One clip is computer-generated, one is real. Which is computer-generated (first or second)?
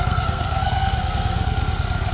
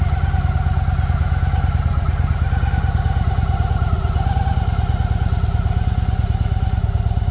first